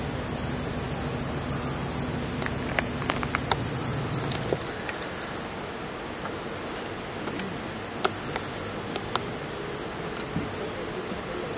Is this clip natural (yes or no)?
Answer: yes